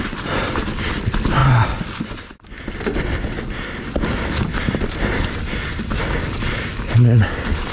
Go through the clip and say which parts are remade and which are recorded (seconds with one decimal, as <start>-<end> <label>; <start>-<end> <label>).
0.0-7.7 recorded